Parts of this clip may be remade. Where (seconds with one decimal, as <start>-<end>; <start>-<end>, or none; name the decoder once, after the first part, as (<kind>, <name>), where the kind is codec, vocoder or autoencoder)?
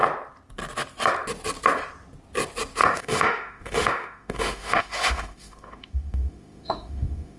2.8-7.4 (autoencoder, DAC-VAE)